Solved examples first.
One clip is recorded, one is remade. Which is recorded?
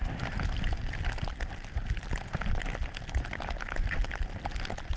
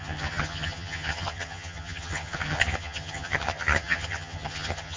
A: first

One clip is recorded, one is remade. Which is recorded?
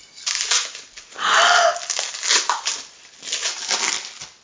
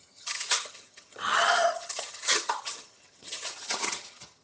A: first